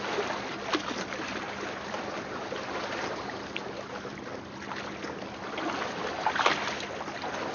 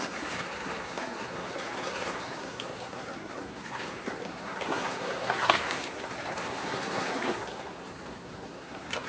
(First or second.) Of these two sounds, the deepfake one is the second